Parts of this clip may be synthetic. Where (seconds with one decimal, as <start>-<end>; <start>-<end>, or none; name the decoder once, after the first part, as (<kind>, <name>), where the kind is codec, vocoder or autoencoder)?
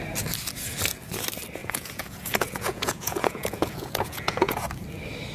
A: 1.6-4.6 (vocoder, Vocos)